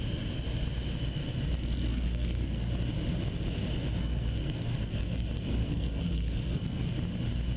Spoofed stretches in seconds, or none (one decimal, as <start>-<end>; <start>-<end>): 1.9-2.7; 4.0-6.9